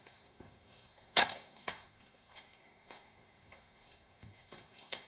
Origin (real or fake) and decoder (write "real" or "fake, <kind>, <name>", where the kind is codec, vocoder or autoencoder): fake, codec, SNAC